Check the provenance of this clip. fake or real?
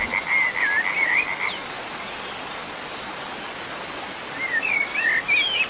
real